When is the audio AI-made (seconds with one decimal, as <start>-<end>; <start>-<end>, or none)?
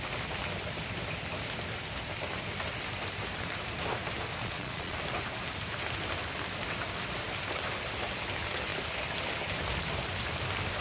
4.4-5.0